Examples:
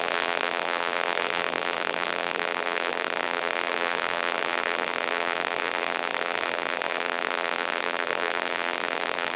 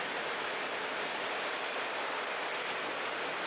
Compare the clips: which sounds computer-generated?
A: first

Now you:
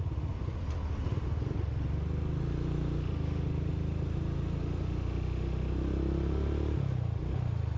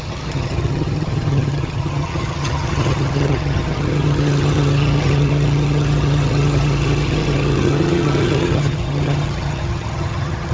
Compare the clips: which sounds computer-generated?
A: second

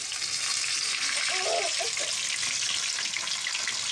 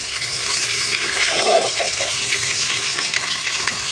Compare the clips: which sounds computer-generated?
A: second